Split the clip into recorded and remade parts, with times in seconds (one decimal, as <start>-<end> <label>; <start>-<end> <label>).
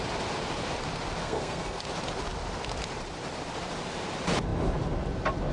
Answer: 0.0-1.2 recorded; 1.2-1.8 remade; 1.8-5.5 recorded